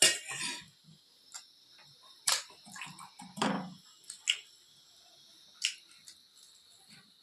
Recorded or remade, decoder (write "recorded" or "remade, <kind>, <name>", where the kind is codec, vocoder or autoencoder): recorded